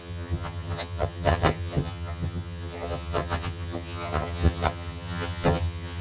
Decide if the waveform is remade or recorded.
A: remade